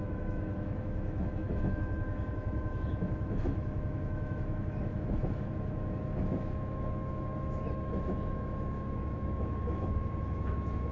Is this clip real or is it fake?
fake